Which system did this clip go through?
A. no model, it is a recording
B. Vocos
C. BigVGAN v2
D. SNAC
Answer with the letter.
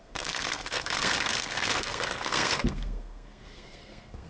D